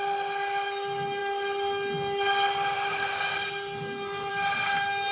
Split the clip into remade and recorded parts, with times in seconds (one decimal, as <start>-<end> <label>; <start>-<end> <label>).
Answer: 0.0-5.1 recorded